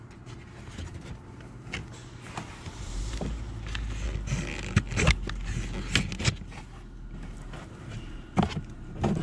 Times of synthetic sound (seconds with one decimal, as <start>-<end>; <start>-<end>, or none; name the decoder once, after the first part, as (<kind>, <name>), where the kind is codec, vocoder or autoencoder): none